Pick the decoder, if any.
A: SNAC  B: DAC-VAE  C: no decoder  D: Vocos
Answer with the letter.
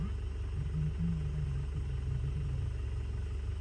C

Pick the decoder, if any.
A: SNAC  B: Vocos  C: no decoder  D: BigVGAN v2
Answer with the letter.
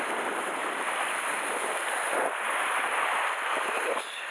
C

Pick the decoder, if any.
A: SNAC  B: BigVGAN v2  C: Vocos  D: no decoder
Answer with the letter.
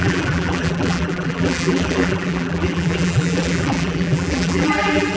B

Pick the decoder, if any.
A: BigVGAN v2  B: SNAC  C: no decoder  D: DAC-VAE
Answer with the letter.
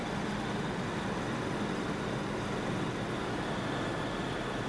C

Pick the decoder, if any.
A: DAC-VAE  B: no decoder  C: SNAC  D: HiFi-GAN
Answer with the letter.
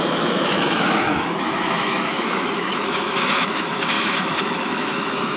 A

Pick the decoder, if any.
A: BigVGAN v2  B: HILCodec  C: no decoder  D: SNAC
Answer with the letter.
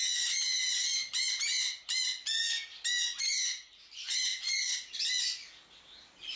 C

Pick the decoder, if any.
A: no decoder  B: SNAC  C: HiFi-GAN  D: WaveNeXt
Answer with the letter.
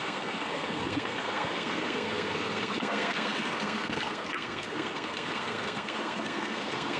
B